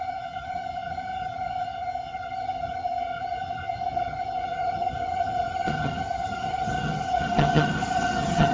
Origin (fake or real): fake